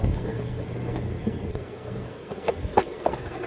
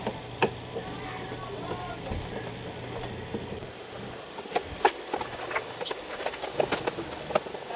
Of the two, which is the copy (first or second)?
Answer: first